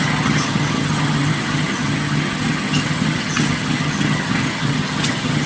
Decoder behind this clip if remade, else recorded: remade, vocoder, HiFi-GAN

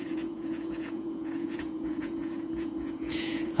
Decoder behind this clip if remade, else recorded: remade, vocoder, Vocos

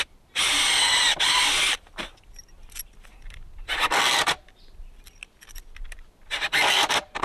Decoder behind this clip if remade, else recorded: recorded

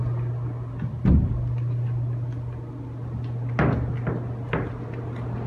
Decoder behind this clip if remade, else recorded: recorded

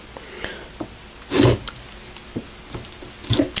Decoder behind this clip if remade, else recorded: recorded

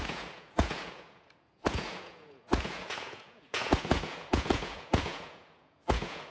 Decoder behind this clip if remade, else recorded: remade, vocoder, Vocos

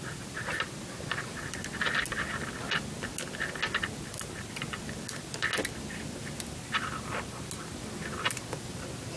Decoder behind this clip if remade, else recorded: recorded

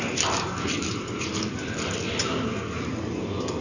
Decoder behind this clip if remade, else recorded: remade, vocoder, BigVGAN v2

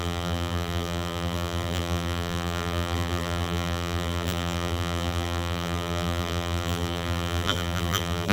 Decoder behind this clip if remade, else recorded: remade, vocoder, BigVGAN v2